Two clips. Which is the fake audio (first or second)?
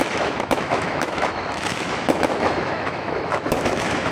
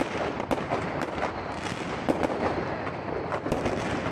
first